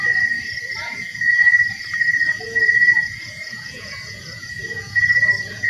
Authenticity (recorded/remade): remade